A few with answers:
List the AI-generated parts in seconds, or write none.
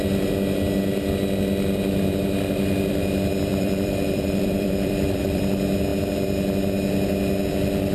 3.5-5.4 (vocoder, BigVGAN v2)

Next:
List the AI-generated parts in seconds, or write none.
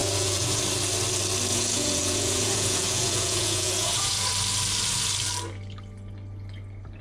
0.0-0.6 (vocoder, Vocos); 1.5-4.3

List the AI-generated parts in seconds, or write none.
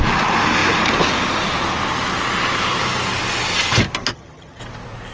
4.1-4.6 (vocoder, HiFi-GAN)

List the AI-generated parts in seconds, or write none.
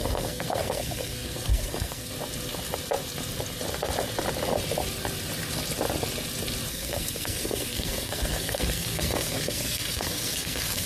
0.0-2.1 (codec, SNAC); 6.7-10.9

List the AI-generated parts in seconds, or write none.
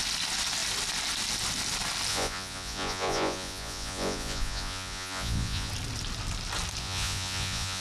2.1-5.7 (vocoder, Vocos); 6.8-7.8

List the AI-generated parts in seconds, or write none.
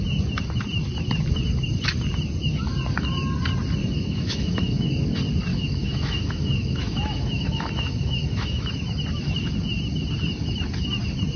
3.8-4.9 (autoencoder, DAC-VAE); 5.5-8.7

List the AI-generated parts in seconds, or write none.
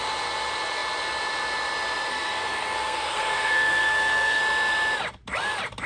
2.1-4.4 (codec, SNAC)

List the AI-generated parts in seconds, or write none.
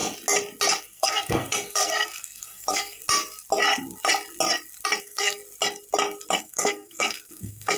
0.8-3.0 (codec, SNAC); 5.0-5.4; 6.4-7.8